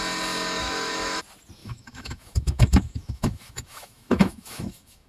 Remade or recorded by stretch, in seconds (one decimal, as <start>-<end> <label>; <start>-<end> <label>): 0.0-0.6 recorded; 0.6-1.2 remade; 1.2-1.6 recorded; 1.6-5.1 remade